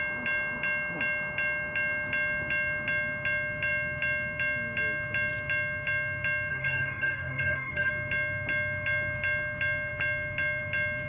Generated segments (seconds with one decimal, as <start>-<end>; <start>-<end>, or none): 6.5-7.9

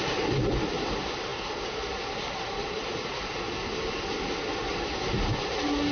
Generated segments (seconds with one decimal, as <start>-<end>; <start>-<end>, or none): none

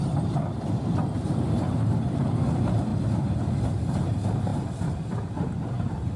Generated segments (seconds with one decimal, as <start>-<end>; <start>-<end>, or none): 0.0-2.9; 3.6-6.2

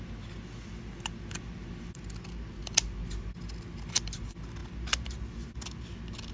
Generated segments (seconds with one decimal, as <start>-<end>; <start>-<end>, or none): none

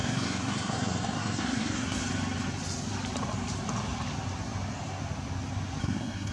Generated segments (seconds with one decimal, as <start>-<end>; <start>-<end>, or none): 0.0-2.0; 5.8-6.3